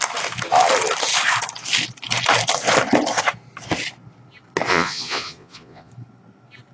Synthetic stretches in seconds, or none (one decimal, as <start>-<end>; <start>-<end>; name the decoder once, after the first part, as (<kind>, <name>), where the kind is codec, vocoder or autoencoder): 4.7-5.9 (vocoder, Vocos)